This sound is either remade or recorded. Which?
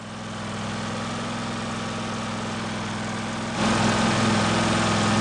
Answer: recorded